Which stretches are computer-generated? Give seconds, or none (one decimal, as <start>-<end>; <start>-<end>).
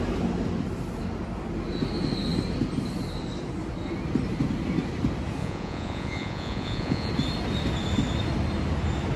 5.4-7.1